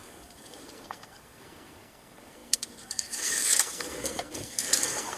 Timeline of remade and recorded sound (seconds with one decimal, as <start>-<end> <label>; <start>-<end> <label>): 0.0-5.2 remade